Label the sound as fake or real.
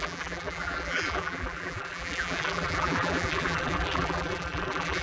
fake